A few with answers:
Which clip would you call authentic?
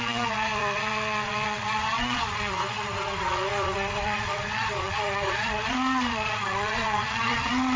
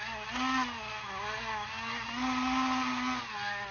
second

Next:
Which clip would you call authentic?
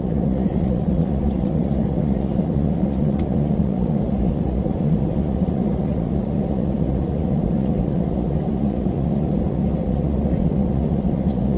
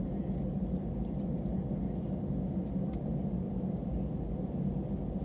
second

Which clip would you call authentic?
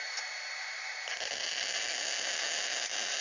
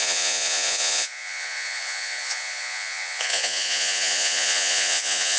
first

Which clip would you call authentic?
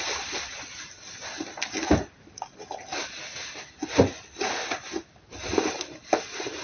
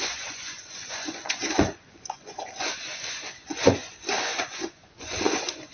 first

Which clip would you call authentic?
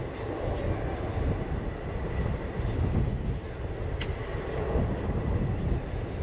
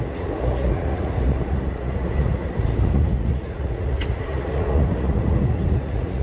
first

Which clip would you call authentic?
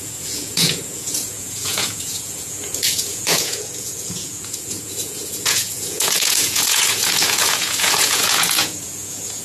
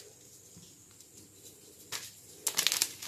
second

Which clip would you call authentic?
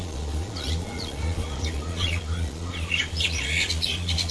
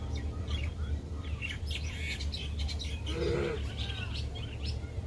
second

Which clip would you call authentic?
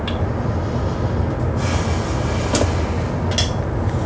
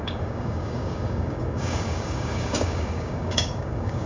first